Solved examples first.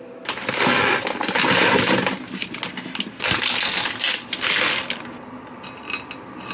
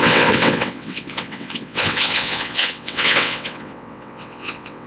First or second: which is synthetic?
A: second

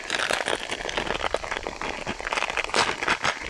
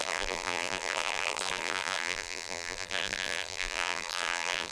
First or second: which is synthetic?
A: second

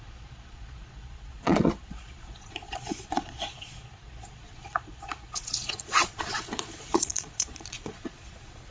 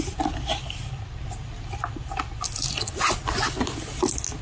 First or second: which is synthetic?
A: first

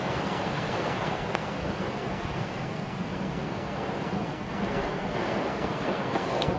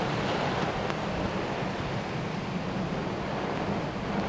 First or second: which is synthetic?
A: first